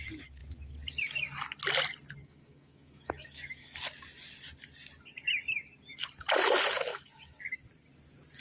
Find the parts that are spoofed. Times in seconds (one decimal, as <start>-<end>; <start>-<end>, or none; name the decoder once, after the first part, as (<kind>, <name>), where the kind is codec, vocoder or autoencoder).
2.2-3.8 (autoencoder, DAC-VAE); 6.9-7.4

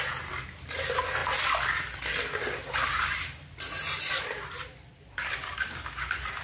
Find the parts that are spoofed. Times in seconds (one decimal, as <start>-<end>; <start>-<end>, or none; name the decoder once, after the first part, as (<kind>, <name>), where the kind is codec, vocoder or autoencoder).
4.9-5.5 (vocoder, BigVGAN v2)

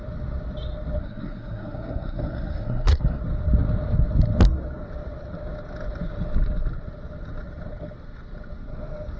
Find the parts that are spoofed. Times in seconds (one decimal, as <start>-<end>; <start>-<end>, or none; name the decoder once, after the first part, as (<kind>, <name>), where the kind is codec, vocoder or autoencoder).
1.0-3.2 (codec, SNAC)